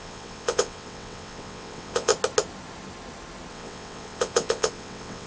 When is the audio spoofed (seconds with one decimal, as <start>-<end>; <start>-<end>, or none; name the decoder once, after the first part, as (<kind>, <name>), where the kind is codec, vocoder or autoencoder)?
0.0-2.1 (vocoder, WaveNeXt); 3.5-5.3